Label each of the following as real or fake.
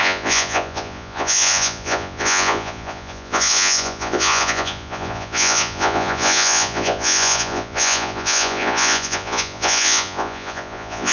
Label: fake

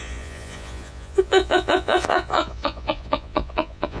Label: fake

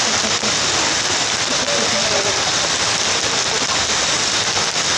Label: real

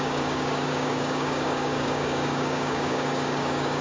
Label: fake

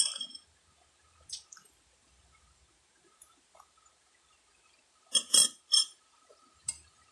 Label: fake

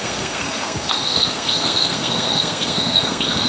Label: fake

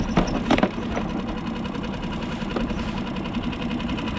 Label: real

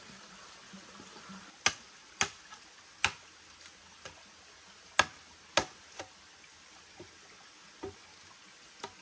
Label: real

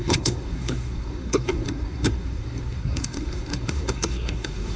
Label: fake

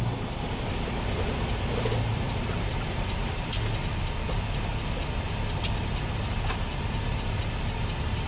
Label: real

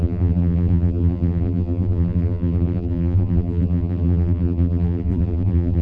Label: fake